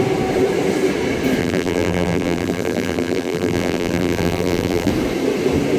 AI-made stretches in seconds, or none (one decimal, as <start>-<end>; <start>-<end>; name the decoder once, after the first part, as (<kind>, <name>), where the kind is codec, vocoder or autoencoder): 1.4-4.9 (vocoder, BigVGAN v2)